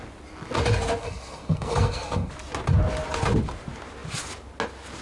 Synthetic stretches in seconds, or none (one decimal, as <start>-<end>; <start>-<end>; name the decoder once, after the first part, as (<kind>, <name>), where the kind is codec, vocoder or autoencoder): 1.0-2.3 (codec, SNAC)